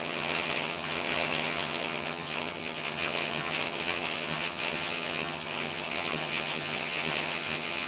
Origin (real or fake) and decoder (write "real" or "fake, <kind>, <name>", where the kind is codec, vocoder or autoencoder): fake, vocoder, HiFi-GAN